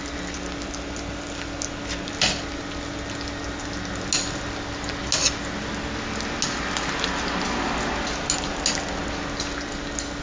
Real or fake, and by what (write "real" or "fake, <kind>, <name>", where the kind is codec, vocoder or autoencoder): real